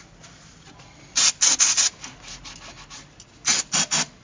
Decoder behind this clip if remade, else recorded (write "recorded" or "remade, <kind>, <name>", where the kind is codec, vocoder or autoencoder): recorded